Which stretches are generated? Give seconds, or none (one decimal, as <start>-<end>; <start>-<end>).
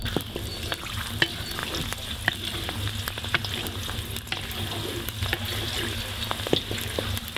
none